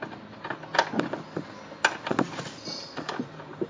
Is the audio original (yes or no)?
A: yes